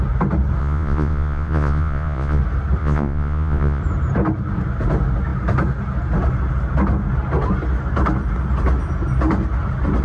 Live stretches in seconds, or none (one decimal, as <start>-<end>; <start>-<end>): 0.0-0.6; 2.4-2.8; 3.8-10.0